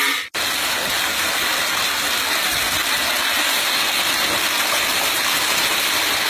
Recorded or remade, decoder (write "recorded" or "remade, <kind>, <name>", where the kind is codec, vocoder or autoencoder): recorded